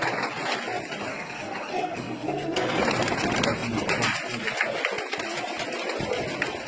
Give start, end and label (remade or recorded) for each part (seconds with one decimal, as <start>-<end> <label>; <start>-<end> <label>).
0.0-1.1 recorded; 1.1-2.8 remade; 2.8-6.7 recorded